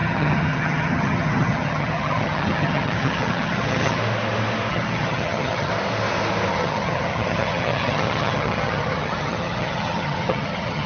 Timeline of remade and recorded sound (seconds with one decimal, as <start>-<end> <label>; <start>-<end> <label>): 0.0-4.0 remade; 4.0-4.7 recorded; 4.7-5.7 remade; 5.7-6.5 recorded; 6.5-10.9 remade